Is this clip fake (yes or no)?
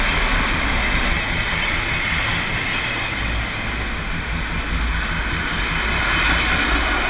no